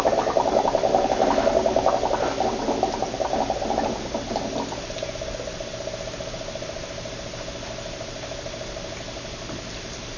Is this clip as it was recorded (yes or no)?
yes